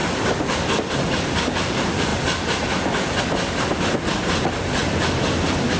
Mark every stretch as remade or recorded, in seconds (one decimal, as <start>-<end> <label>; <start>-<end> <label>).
0.0-5.8 recorded